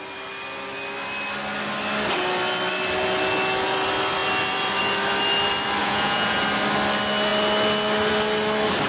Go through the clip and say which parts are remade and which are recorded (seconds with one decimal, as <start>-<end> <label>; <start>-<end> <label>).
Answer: 0.0-5.8 recorded; 5.8-6.4 remade; 6.4-8.9 recorded